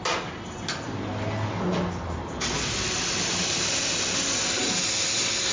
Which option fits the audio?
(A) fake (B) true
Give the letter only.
B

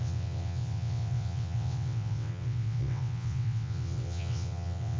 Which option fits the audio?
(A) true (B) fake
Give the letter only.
B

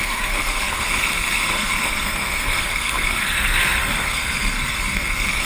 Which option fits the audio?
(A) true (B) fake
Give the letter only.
B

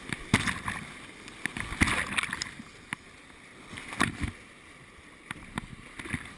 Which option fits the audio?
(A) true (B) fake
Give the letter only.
A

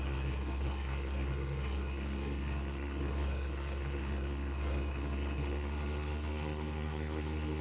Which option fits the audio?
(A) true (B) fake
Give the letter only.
B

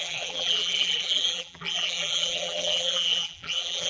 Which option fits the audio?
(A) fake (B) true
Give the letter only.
A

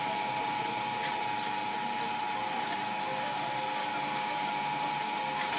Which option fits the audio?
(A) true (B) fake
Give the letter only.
A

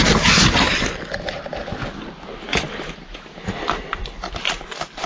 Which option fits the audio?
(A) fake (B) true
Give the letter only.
B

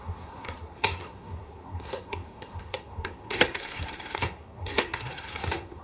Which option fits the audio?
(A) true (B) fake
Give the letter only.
B